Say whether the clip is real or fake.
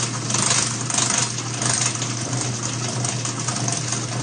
real